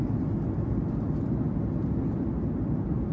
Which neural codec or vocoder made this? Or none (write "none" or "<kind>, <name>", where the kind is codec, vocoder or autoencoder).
none